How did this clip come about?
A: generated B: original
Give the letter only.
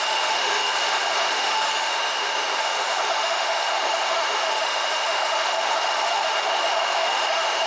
A